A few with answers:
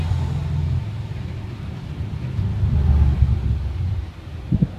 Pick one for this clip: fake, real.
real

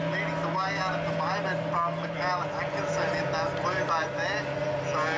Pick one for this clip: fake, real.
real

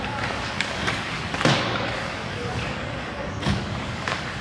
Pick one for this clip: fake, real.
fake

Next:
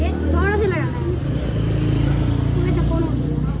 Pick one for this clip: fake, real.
real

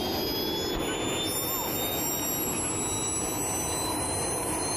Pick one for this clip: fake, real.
real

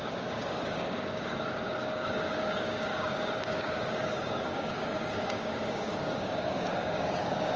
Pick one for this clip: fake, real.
fake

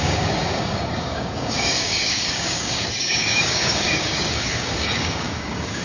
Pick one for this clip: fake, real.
fake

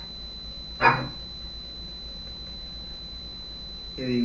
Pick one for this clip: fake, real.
real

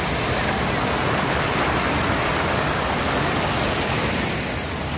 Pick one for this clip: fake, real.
real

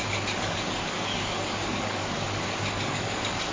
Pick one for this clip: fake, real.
fake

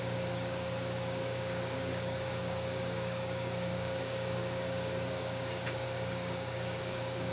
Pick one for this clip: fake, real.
fake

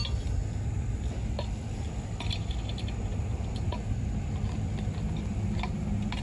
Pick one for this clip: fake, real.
real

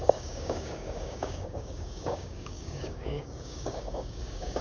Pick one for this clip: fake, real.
fake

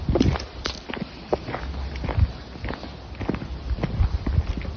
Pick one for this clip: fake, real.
real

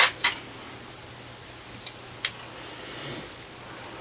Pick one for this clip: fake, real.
real